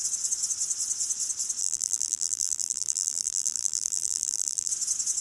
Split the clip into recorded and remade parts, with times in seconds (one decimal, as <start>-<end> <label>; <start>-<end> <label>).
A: 0.0-1.6 recorded; 1.6-4.7 remade; 4.7-5.2 recorded

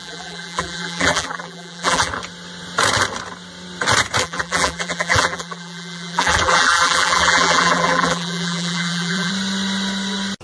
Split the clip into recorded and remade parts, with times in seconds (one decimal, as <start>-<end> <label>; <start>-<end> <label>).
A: 0.0-2.1 remade; 2.1-4.2 recorded; 4.2-9.3 remade; 9.3-10.4 recorded

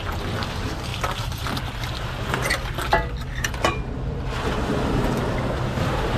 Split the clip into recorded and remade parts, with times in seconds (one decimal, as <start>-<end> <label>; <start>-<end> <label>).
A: 0.0-6.2 recorded